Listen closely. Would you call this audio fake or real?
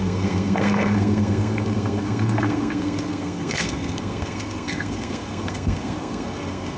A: fake